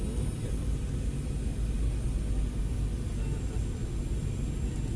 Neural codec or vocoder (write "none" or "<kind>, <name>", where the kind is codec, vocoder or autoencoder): none